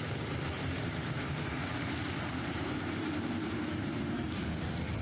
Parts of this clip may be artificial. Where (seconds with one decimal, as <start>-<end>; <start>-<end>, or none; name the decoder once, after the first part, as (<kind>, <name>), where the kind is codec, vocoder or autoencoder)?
0.0-1.7 (vocoder, BigVGAN v2); 2.3-5.0